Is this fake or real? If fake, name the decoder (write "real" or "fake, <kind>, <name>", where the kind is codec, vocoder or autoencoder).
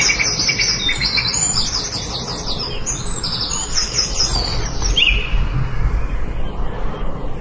real